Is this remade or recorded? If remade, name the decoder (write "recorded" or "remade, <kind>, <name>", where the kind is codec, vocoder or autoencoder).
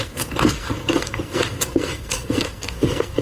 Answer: remade, codec, SNAC